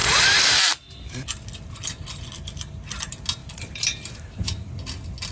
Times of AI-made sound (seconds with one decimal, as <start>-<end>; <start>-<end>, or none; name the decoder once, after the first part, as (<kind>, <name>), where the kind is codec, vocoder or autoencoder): 3.4-4.7 (vocoder, BigVGAN v2)